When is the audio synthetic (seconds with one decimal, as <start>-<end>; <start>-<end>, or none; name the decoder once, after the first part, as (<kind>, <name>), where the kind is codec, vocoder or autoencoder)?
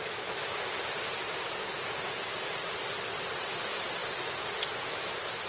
none